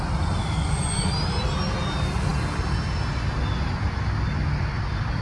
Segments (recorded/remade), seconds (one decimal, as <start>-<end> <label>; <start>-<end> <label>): 0.0-0.6 recorded; 0.6-1.1 remade; 1.1-5.2 recorded